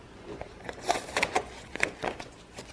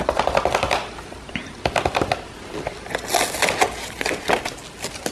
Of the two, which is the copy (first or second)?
first